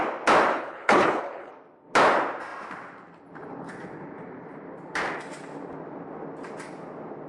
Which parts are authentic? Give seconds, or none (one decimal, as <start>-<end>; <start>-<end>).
0.0-0.5; 1.5-7.3